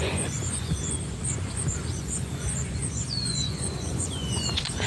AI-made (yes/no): yes